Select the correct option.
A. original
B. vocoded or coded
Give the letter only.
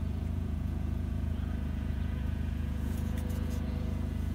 B